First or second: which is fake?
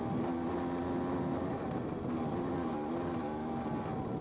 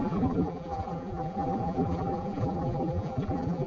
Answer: second